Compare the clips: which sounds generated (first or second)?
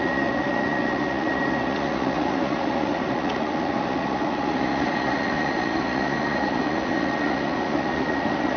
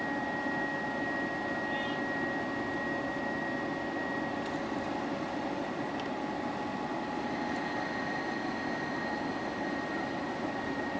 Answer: first